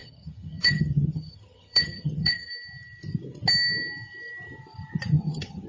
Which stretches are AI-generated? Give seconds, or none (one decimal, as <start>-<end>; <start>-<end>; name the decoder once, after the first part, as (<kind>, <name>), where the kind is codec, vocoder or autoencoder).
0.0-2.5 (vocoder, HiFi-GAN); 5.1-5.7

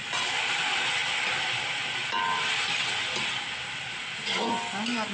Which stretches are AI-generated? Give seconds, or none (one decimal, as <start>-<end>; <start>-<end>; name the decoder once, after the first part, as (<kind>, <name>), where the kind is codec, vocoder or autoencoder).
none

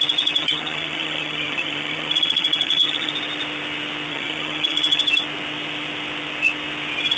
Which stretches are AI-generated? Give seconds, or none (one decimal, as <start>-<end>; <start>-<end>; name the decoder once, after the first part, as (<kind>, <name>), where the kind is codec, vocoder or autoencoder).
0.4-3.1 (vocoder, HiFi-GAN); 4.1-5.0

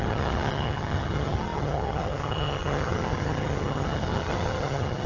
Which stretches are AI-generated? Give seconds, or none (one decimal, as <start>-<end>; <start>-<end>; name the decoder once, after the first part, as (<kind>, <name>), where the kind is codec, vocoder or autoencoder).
0.0-5.1 (vocoder, HiFi-GAN)

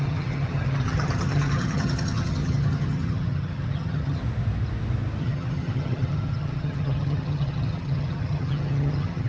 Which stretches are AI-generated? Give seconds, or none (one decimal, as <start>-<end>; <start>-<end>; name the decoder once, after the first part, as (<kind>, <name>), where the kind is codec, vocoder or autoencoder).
0.0-4.2 (vocoder, HiFi-GAN); 5.2-9.3

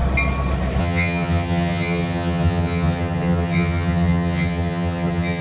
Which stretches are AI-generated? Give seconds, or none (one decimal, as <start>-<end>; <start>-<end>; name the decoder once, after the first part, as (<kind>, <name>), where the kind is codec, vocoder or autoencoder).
0.8-5.4 (vocoder, HiFi-GAN)

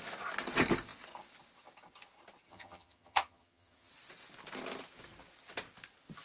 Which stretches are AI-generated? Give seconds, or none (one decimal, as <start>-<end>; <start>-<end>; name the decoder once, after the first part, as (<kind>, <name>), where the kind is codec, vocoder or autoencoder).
2.5-3.9 (vocoder, HiFi-GAN)